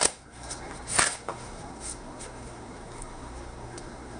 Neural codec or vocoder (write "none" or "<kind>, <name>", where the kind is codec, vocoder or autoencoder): codec, SNAC